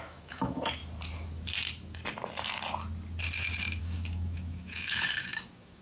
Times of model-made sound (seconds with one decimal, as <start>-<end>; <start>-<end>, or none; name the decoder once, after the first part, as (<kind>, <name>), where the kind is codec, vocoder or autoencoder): 0.0-0.8 (autoencoder, DAC-VAE); 3.8-5.8